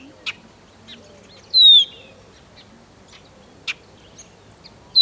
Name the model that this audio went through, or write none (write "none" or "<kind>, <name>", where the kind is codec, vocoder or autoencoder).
none